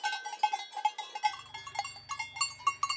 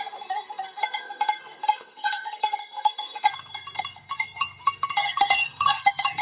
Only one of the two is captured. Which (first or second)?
first